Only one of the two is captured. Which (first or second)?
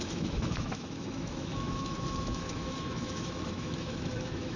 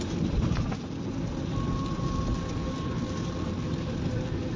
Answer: second